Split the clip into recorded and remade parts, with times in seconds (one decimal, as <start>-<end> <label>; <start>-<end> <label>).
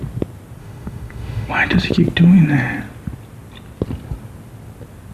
0.0-0.6 recorded; 0.6-1.5 remade; 1.5-5.1 recorded